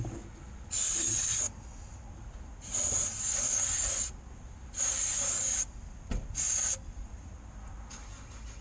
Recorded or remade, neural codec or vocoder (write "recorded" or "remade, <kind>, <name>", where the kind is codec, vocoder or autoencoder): recorded